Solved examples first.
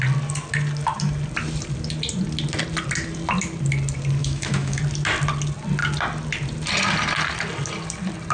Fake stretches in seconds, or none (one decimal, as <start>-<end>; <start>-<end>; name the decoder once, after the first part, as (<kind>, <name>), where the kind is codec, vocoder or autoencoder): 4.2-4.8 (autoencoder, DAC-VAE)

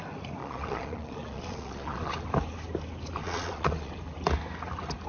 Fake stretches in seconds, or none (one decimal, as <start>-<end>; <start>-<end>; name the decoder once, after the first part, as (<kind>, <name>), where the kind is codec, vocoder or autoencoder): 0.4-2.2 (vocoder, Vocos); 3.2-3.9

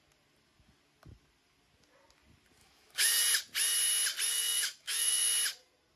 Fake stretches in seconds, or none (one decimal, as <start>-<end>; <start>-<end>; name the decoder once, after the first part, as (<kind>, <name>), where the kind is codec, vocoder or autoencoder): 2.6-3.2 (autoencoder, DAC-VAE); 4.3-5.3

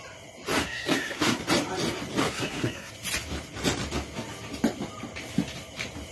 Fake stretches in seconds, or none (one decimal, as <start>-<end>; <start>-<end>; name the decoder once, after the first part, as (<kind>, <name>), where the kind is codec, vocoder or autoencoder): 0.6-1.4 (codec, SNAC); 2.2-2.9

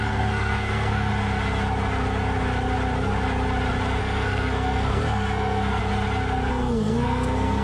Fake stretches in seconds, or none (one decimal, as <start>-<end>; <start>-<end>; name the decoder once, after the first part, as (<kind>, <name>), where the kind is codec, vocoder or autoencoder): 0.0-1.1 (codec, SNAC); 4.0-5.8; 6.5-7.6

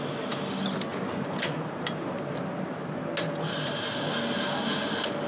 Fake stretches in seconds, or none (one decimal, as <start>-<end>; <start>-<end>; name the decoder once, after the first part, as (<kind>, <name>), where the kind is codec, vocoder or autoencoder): 0.9-2.4 (vocoder, BigVGAN v2)

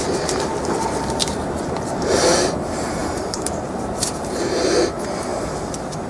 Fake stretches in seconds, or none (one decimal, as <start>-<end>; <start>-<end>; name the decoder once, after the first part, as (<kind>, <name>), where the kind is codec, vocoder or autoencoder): 1.2-2.1 (vocoder, BigVGAN v2); 3.0-4.7; 5.3-6.1

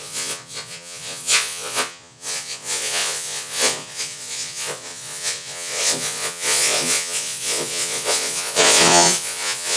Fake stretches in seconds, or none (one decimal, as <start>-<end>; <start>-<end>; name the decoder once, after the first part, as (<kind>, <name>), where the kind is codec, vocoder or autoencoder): 0.0-9.8 (vocoder, Vocos)